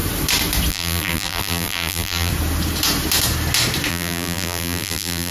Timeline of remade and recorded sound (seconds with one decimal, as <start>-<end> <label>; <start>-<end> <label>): 0.0-0.7 recorded; 0.7-2.3 remade; 2.3-3.9 recorded; 3.9-5.3 remade